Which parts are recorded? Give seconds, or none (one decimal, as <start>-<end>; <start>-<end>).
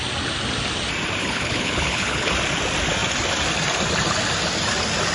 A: 0.0-1.2; 2.3-5.1